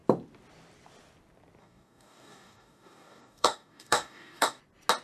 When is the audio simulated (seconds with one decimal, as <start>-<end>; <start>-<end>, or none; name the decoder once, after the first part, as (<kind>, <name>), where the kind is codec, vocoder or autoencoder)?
1.6-4.6 (codec, DAC)